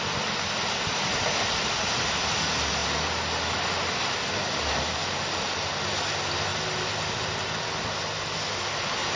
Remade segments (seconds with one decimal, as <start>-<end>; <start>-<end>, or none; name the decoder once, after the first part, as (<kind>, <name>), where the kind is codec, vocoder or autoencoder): none